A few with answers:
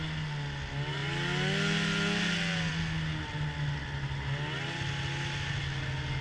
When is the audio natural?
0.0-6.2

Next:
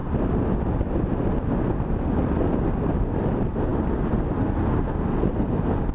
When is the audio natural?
0.0-5.9

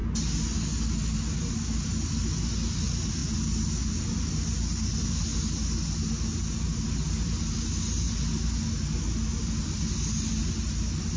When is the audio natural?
0.0-11.2

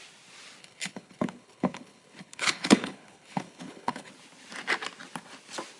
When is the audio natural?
0.0-0.6; 4.1-5.8

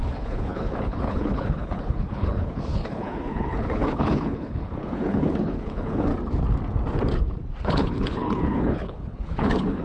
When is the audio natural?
6.1-7.6

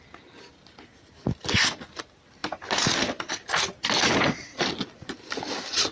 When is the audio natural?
0.0-5.9

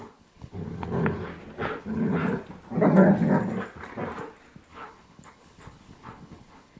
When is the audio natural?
1.3-1.8; 2.2-4.7